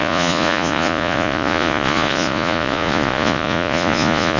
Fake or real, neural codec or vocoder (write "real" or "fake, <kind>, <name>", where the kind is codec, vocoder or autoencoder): fake, vocoder, Vocos